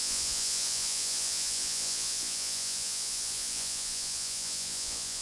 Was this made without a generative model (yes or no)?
no